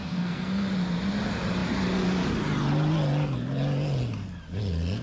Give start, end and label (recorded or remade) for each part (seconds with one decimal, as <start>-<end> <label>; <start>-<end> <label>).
0.0-0.7 remade; 0.7-5.0 recorded